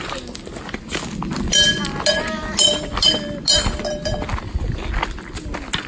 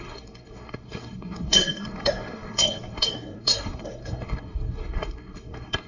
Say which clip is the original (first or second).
first